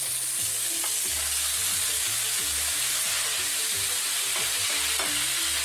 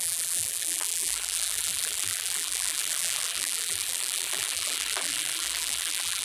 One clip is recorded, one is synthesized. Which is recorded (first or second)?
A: first